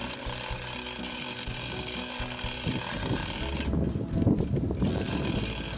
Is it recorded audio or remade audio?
recorded